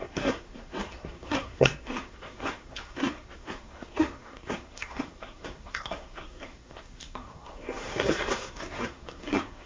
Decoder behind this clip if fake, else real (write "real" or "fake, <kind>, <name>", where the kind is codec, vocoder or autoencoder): fake, codec, SNAC